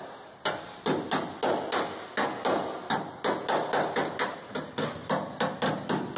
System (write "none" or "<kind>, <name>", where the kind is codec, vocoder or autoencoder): none